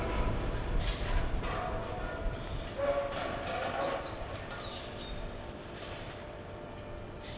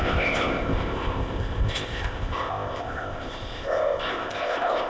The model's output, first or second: second